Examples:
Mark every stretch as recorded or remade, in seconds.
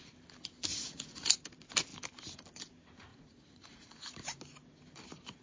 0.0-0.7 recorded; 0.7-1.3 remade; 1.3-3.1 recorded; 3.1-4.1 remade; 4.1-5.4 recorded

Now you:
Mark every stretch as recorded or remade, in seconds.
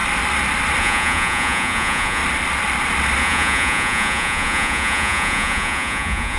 0.0-0.8 recorded; 0.8-2.2 remade; 2.2-3.2 recorded; 3.2-6.4 remade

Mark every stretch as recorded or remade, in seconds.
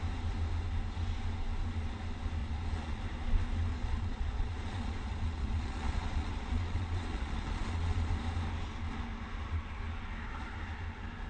0.0-2.4 recorded; 2.4-3.0 remade; 3.0-3.7 recorded; 3.7-8.1 remade; 8.1-11.3 recorded